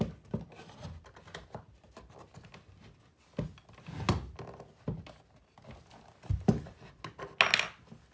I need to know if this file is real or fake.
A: real